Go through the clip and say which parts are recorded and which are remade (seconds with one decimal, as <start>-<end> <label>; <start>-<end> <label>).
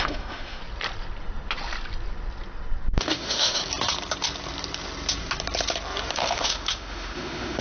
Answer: 0.0-0.6 remade; 0.6-3.0 recorded; 3.0-3.6 remade; 3.6-6.1 recorded; 6.1-7.6 remade